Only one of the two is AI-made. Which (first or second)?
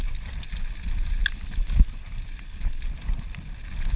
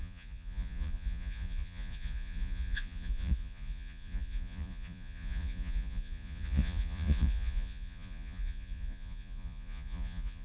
second